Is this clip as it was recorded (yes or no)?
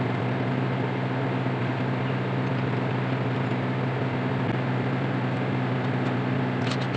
yes